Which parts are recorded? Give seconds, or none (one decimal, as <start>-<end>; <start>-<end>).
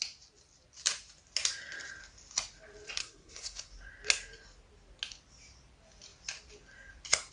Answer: 0.0-3.0; 3.7-7.3